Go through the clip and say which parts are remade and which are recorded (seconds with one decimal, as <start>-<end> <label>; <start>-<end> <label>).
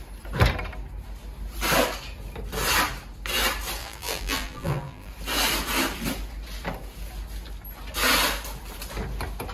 0.0-3.8 recorded; 3.8-5.1 remade; 5.1-9.5 recorded